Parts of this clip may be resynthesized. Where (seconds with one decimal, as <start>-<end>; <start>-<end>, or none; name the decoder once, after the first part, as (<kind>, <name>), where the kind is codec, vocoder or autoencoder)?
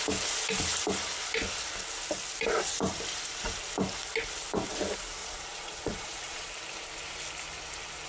5.2-6.5 (vocoder, Vocos)